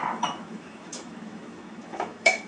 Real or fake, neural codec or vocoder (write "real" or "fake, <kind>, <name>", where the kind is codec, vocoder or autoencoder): fake, autoencoder, DAC-VAE